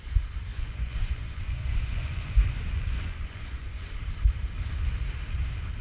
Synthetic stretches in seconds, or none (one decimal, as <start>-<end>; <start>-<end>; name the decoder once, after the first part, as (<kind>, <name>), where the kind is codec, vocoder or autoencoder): 0.5-4.0 (vocoder, Vocos)